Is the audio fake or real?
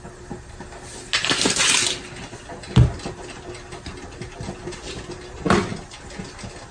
real